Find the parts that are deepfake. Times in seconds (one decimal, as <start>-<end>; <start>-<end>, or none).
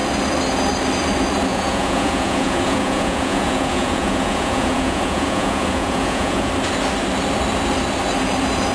1.5-6.5